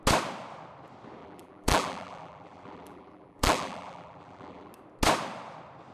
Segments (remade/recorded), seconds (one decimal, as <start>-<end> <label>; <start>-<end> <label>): 0.0-1.2 recorded; 1.2-4.7 remade; 4.7-5.9 recorded